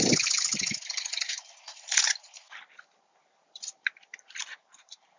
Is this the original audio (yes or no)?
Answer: no